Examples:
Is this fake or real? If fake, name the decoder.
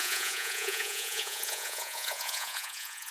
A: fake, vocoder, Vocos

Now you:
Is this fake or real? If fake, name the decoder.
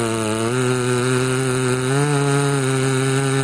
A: real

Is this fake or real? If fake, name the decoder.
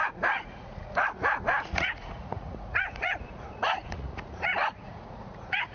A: fake, vocoder, Vocos